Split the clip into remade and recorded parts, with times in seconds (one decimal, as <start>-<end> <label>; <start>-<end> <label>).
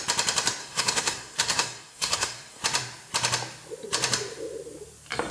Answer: 0.0-0.6 recorded; 0.6-2.6 remade; 2.6-5.3 recorded